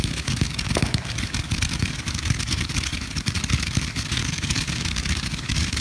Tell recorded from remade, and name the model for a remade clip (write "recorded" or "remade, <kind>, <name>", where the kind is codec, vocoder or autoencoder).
remade, codec, DAC